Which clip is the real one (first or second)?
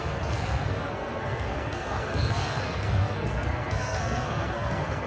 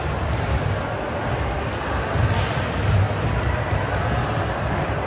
second